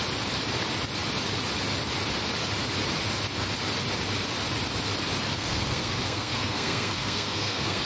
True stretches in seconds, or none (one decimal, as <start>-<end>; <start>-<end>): 0.0-5.3